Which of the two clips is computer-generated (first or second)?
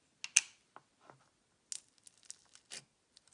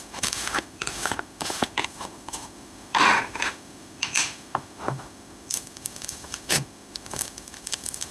second